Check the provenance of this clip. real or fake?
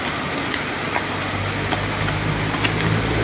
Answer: real